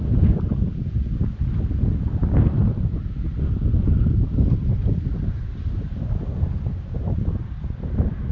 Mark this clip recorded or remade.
recorded